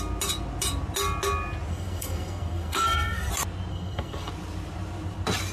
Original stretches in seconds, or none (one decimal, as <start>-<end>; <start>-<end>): 0.0-1.7; 3.3-3.7; 4.3-5.5